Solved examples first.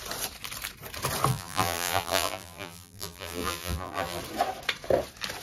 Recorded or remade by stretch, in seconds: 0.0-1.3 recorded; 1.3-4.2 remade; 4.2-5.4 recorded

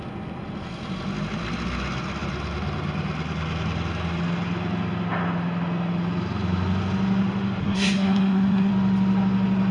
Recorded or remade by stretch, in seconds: 0.0-7.6 recorded; 7.6-8.7 remade; 8.7-9.7 recorded

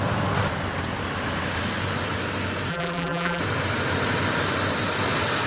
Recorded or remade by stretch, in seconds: 0.0-2.7 recorded; 2.7-3.4 remade; 3.4-5.5 recorded